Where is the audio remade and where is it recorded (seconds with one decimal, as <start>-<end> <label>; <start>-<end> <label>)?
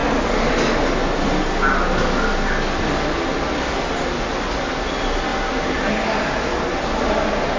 0.0-7.6 recorded